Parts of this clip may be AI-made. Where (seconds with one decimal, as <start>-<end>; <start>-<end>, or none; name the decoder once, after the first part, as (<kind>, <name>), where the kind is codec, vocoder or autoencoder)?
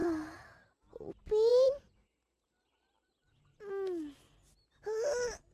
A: 0.0-1.1 (vocoder, BigVGAN v2); 1.5-2.7